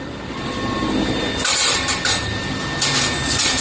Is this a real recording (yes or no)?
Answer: yes